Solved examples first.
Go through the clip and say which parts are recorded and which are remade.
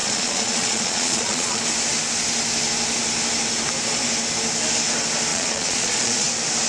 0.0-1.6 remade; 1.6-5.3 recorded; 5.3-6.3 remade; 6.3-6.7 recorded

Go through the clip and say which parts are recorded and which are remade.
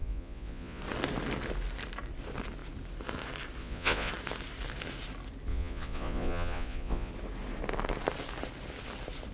0.0-0.8 remade; 0.8-3.6 recorded; 3.6-4.1 remade; 4.1-5.5 recorded; 5.5-7.1 remade; 7.1-9.3 recorded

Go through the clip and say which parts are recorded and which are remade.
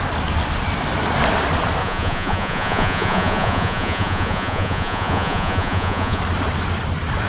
0.0-1.8 recorded; 1.8-6.2 remade; 6.2-7.3 recorded